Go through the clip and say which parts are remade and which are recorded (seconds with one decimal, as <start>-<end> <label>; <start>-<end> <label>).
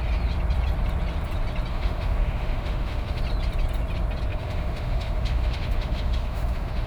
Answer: 0.0-1.7 recorded; 1.7-3.2 remade; 3.2-4.3 recorded; 4.3-6.9 remade